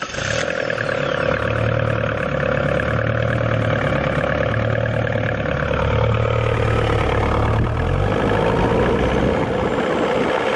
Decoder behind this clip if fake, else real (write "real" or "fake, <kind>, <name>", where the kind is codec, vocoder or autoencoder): real